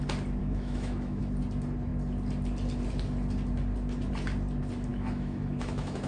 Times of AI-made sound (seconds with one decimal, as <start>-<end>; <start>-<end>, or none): 0.4-1.2; 4.9-6.1